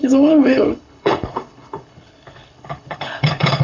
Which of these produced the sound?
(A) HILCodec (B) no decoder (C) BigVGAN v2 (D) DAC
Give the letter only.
A